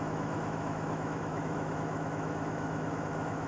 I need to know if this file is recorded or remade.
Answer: remade